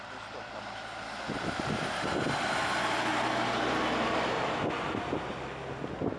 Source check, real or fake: real